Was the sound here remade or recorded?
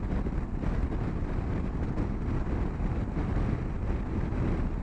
recorded